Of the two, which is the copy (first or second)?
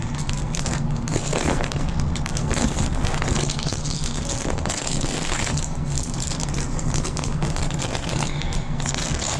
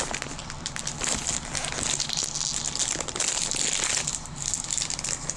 first